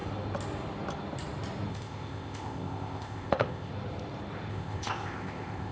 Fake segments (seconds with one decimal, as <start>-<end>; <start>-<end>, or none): 1.7-3.7; 4.5-5.7